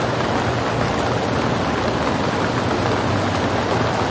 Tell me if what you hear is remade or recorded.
recorded